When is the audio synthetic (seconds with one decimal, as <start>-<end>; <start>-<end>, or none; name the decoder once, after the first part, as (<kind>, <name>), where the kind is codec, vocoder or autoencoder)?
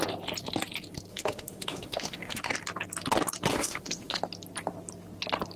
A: 1.1-2.5 (autoencoder, DAC-VAE); 3.5-4.2